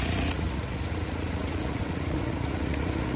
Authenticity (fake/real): fake